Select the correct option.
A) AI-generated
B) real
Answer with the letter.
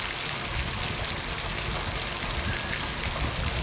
B